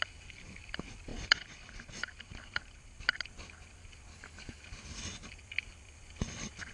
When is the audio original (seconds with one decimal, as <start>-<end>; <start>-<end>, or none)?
0.0-4.1; 4.6-6.7